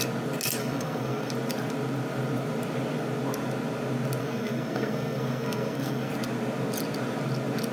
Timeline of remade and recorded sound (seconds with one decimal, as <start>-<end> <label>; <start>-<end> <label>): 0.0-0.6 recorded; 0.6-1.3 remade; 1.3-4.2 recorded; 4.2-6.1 remade; 6.1-7.7 recorded